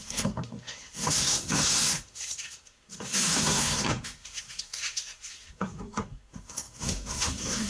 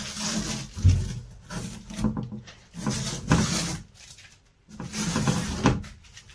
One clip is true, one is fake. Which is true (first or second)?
second